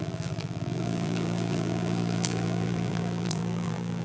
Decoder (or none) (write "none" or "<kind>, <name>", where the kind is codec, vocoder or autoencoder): vocoder, BigVGAN v2